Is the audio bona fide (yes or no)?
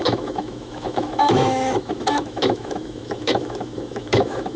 no